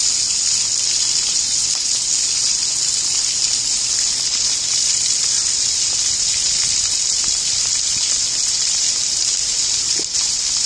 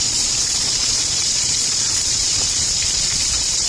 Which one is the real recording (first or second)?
first